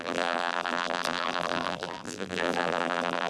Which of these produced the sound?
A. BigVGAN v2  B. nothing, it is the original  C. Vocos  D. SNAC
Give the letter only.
A